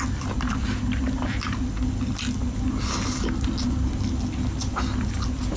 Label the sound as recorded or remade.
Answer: recorded